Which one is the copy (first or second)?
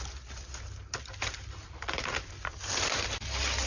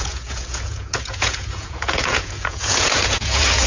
second